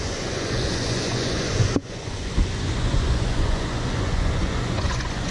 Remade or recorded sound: remade